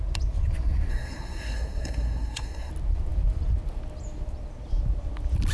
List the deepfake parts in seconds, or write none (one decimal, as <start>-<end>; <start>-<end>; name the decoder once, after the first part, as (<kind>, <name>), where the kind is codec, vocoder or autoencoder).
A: 0.9-2.7 (codec, SNAC)